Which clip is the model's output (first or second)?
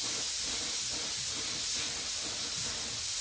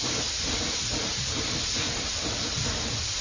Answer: second